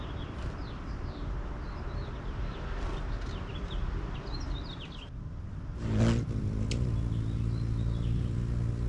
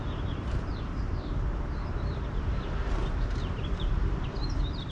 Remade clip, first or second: second